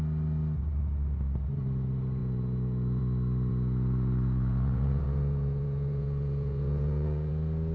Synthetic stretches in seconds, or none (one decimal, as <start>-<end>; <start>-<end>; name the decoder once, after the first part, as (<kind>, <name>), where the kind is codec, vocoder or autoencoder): 2.2-3.0 (vocoder, Vocos); 3.5-7.3